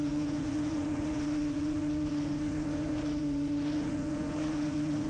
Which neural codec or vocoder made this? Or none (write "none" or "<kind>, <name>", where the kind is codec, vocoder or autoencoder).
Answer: vocoder, Vocos